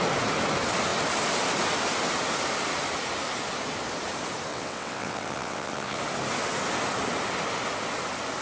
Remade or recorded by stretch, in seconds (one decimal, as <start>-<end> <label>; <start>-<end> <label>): 0.0-4.5 recorded; 4.5-6.0 remade; 6.0-8.4 recorded